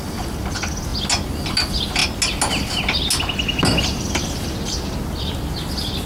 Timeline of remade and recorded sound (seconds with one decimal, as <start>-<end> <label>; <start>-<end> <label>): 0.0-6.1 recorded